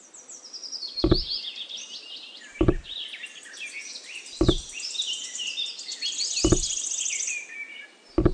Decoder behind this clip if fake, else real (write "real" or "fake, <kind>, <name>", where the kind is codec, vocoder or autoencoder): real